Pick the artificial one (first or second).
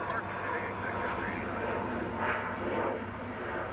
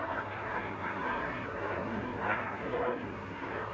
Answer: second